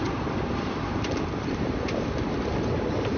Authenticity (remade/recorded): recorded